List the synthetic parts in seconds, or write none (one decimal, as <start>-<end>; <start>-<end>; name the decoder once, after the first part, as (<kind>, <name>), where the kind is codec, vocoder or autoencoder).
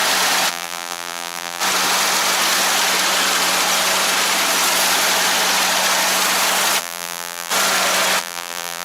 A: 0.5-1.6 (vocoder, BigVGAN v2); 6.8-7.5; 8.2-8.8